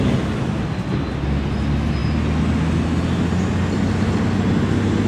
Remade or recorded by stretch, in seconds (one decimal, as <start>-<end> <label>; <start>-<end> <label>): 0.0-5.1 recorded